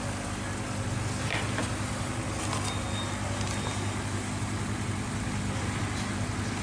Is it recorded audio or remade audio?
recorded